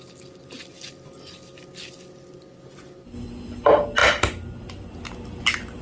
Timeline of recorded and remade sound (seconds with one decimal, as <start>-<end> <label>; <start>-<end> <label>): 0.0-5.8 recorded